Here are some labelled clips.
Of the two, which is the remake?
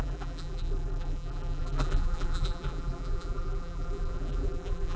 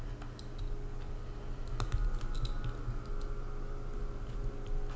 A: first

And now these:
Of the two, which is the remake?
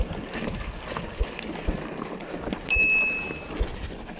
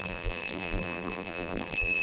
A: second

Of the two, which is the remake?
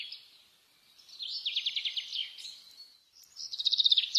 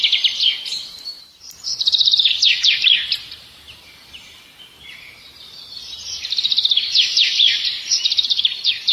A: second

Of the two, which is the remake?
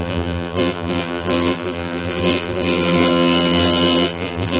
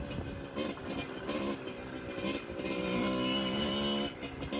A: first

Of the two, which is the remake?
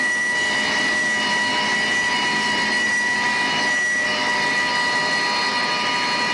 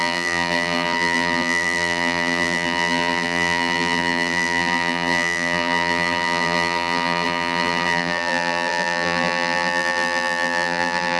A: second